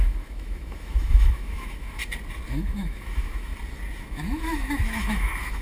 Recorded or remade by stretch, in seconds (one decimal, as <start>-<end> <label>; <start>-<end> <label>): 0.0-2.0 remade; 2.0-2.5 recorded; 2.5-3.5 remade; 3.5-4.0 recorded; 4.0-5.6 remade

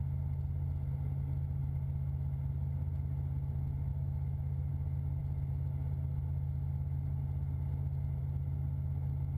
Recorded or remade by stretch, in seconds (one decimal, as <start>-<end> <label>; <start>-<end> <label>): 0.0-3.9 recorded; 3.9-4.7 remade; 4.7-9.4 recorded

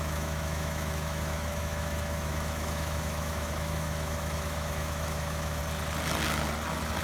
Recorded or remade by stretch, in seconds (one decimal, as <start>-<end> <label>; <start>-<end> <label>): 0.0-5.6 remade; 5.6-7.0 recorded